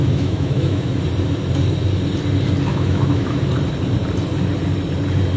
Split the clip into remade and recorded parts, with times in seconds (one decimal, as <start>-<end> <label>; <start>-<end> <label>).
0.0-1.0 remade; 1.0-2.7 recorded; 2.7-3.4 remade; 3.4-5.4 recorded